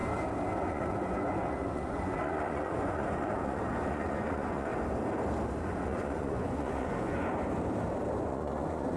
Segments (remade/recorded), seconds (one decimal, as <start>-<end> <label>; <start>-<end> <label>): 0.0-0.7 recorded; 0.7-4.7 remade; 4.7-5.6 recorded; 5.6-7.2 remade; 7.2-8.2 recorded; 8.2-9.0 remade